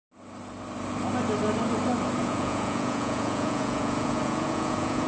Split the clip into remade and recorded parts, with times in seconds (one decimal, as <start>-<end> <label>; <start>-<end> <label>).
0.0-2.2 recorded; 2.2-5.1 remade